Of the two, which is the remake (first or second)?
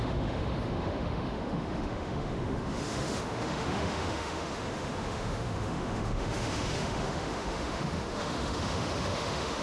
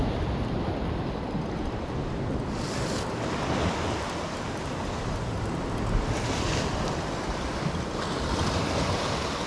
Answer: first